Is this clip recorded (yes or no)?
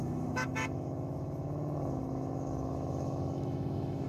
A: no